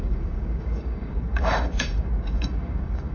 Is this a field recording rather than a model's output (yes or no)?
no